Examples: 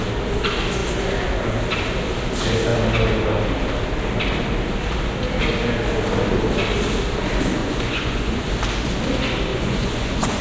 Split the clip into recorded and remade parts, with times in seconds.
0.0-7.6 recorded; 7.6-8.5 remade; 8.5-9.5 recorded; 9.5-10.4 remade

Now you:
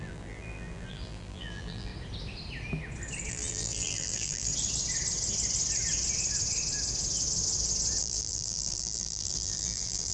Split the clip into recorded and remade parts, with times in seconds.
0.0-1.9 remade; 1.9-3.3 recorded; 3.3-4.5 remade; 4.5-8.0 recorded; 8.0-10.1 remade